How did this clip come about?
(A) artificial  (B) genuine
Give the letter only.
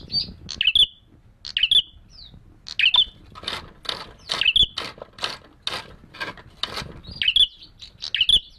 B